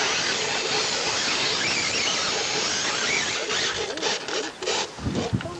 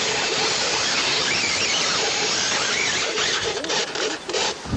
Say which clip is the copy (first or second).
second